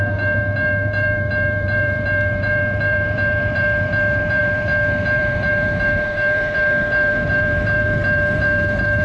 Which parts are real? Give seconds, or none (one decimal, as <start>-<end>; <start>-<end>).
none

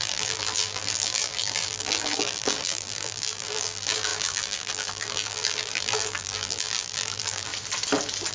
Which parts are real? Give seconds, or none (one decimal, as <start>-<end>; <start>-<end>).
7.5-8.3

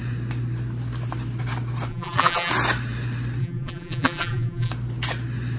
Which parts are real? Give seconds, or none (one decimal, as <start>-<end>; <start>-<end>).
0.0-1.9; 2.5-3.4; 4.7-5.6

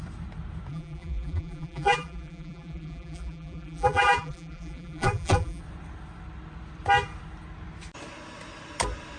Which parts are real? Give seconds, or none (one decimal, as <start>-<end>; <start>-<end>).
0.0-0.7; 5.6-9.2

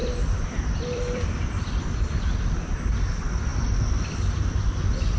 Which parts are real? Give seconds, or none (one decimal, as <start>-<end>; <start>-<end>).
2.0-3.5; 4.4-5.2